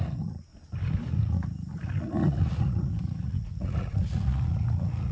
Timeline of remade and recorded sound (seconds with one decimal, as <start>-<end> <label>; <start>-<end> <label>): 0.0-0.5 remade; 0.5-1.1 recorded; 1.1-5.1 remade